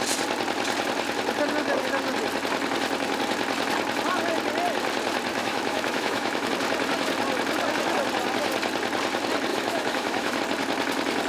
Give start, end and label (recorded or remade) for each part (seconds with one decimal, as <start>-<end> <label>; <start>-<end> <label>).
0.0-5.3 recorded; 5.3-6.5 remade; 6.5-9.5 recorded; 9.5-10.4 remade; 10.4-11.3 recorded